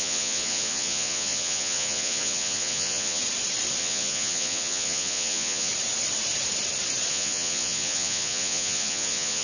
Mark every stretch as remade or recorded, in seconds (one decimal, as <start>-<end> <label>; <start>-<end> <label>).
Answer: 0.0-3.2 remade; 3.2-3.8 recorded; 3.8-5.7 remade; 5.7-7.1 recorded; 7.1-9.4 remade